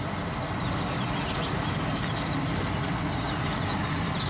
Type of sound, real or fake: real